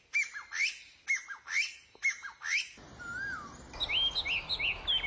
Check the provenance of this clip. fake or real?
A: real